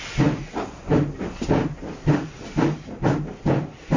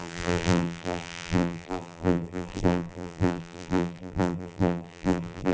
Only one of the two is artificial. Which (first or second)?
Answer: second